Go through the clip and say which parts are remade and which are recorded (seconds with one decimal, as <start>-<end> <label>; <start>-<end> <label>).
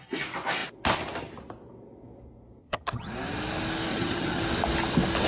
0.0-2.6 recorded; 2.6-3.1 remade; 3.1-3.9 recorded; 3.9-4.4 remade; 4.4-5.3 recorded